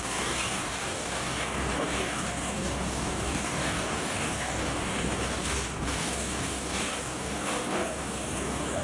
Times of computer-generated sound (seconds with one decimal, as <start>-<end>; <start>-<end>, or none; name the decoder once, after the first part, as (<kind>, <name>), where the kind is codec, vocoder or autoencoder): 0.0-8.8 (codec, DAC)